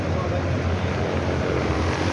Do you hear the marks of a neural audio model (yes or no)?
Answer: no